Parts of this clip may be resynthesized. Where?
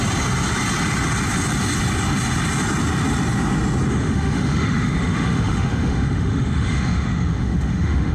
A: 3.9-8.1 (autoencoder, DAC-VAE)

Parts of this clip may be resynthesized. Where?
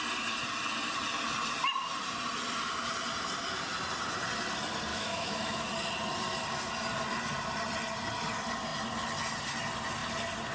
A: 4.9-5.7 (autoencoder, DAC-VAE)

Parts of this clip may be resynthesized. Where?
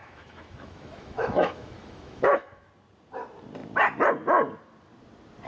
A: 0.0-2.7 (autoencoder, DAC-VAE)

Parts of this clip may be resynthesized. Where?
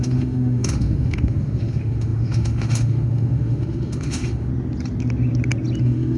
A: 0.0-4.5 (autoencoder, DAC-VAE); 5.8-6.2